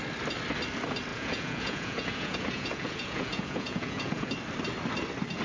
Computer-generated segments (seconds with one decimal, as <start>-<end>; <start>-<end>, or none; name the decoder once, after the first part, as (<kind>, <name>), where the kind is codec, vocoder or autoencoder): 1.1-4.3 (vocoder, Vocos)